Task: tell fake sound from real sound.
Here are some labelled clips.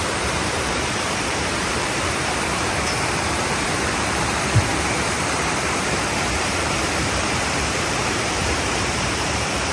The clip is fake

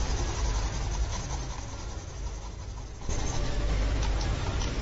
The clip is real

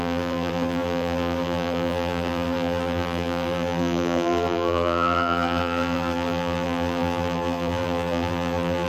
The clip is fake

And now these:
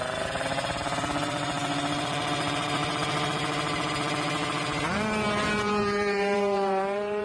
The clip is fake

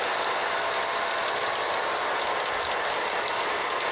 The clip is real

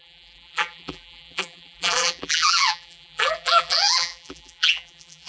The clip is fake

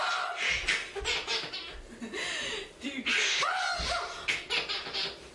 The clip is real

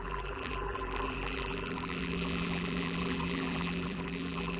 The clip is fake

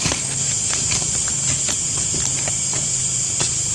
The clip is real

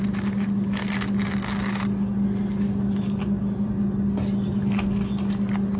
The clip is real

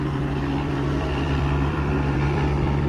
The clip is fake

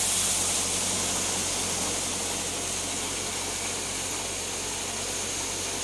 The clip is real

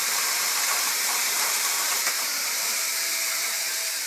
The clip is fake